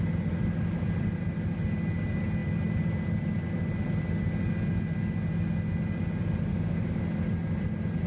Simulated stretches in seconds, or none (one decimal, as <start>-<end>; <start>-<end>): 6.5-7.0